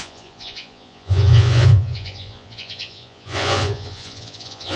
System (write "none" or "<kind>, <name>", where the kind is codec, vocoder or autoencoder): vocoder, Vocos